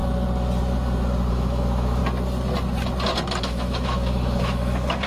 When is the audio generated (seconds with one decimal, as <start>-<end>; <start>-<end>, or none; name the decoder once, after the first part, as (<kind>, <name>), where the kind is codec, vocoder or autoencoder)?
1.3-2.0 (autoencoder, DAC-VAE); 3.4-5.1